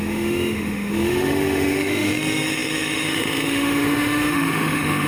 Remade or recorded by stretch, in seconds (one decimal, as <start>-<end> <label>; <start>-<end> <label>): 0.0-5.1 remade